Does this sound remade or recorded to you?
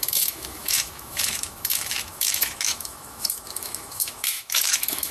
remade